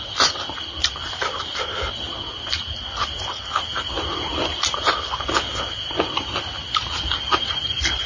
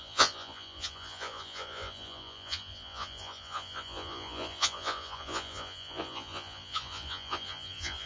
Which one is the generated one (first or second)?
second